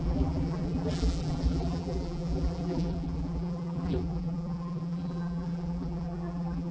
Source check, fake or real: fake